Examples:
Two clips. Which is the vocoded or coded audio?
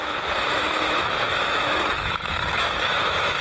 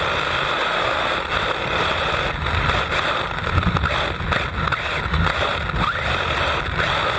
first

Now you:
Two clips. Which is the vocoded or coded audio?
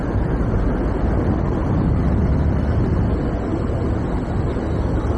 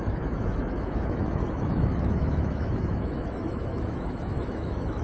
second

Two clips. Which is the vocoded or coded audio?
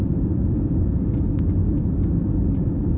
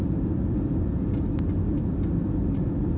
first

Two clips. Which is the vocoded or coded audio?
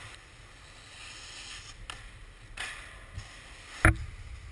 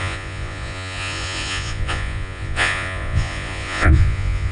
second